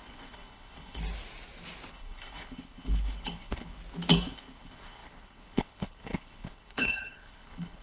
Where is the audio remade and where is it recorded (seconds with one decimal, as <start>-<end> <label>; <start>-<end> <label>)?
0.0-1.0 remade; 1.0-1.9 recorded; 1.9-3.8 remade; 3.8-4.3 recorded; 4.3-7.8 remade